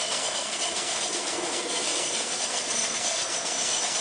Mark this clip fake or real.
fake